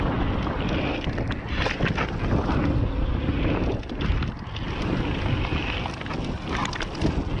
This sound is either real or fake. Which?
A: real